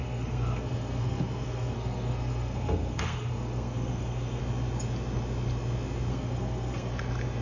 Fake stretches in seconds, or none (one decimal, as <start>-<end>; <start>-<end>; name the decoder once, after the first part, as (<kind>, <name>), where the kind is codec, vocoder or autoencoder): 0.0-4.4 (codec, SNAC); 6.1-6.9